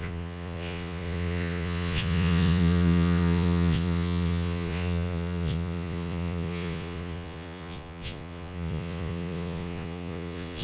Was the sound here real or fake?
fake